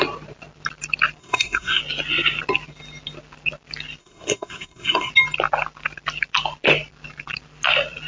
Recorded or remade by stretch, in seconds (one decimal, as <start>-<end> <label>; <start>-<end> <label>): 0.0-1.2 recorded; 1.2-1.8 remade; 1.8-4.0 recorded; 4.0-5.1 remade; 5.1-8.1 recorded